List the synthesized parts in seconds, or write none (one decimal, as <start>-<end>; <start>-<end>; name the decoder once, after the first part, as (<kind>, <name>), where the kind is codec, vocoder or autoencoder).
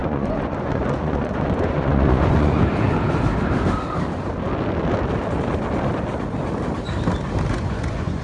0.0-2.6 (vocoder, Vocos); 7.5-8.2